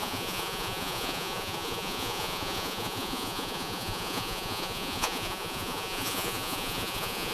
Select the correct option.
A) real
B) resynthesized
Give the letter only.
B